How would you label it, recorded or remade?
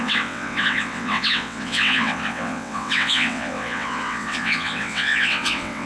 remade